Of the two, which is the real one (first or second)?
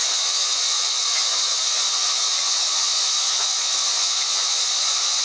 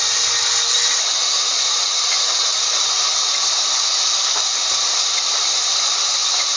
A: second